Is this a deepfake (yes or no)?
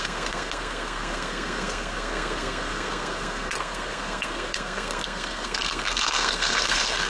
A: yes